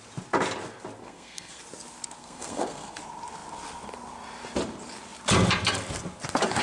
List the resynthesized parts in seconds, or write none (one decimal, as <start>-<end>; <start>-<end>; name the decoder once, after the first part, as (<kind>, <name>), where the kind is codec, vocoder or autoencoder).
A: 1.0-1.6 (codec, SNAC); 2.2-3.0